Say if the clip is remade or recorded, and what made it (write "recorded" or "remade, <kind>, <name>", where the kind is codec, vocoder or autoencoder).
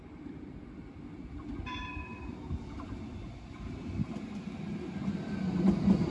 recorded